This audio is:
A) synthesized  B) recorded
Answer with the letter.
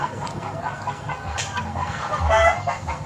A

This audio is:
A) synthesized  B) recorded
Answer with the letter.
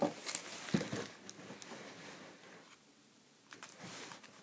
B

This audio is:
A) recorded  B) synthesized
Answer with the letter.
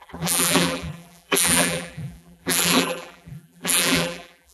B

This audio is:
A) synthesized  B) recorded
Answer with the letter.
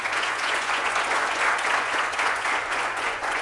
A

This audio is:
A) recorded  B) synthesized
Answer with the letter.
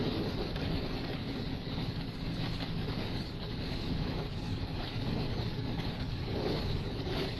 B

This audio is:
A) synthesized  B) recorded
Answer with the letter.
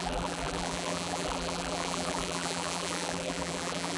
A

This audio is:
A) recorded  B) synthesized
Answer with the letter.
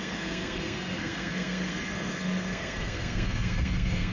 B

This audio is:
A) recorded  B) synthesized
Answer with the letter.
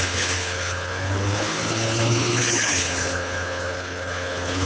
B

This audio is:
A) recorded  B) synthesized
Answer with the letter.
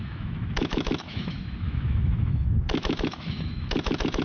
B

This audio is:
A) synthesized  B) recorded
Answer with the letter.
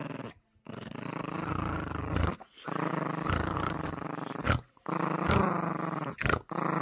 B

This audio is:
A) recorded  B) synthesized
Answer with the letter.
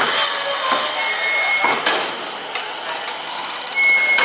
A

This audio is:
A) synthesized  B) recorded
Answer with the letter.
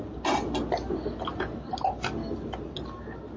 B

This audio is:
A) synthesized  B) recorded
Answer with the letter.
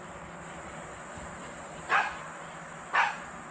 B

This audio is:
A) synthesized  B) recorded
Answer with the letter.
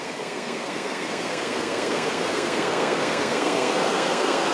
A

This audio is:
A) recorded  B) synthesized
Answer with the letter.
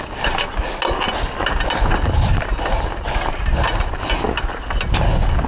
A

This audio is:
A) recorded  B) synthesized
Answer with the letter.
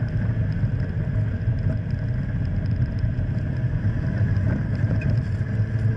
A